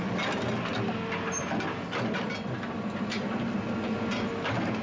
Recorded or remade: recorded